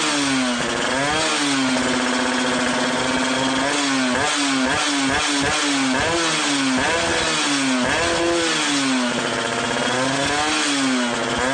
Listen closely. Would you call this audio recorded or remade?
recorded